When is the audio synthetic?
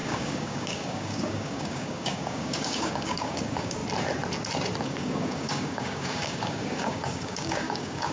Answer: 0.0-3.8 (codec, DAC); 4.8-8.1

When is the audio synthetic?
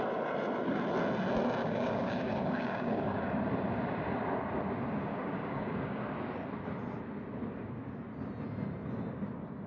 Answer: 1.6-3.3 (codec, DAC); 5.1-6.0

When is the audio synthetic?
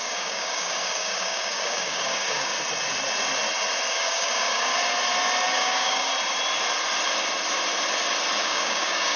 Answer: 0.0-2.5 (codec, DAC); 3.9-4.7; 5.5-6.1; 8.4-9.2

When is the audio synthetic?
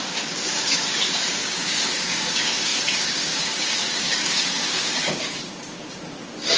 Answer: 0.0-6.6 (codec, DAC)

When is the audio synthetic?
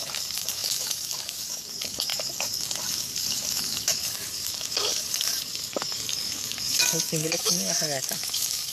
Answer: 0.0-8.7 (codec, DAC)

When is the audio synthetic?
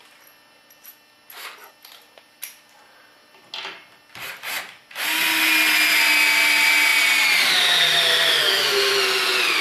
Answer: 8.4-8.9 (codec, DAC)